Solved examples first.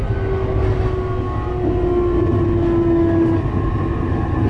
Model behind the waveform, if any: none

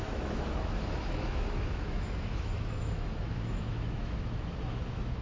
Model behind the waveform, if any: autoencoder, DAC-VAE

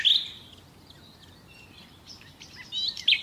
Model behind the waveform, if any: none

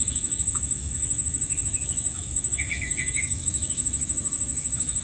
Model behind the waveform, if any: autoencoder, DAC-VAE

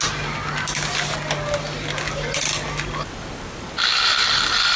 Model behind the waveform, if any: none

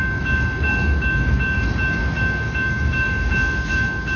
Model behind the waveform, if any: autoencoder, DAC-VAE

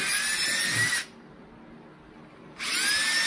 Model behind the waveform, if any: none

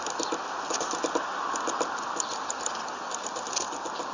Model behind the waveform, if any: none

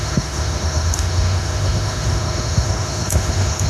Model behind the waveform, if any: autoencoder, DAC-VAE